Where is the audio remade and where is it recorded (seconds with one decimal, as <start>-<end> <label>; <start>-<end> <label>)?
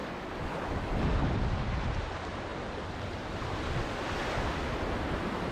0.0-2.5 recorded; 2.5-3.7 remade; 3.7-5.5 recorded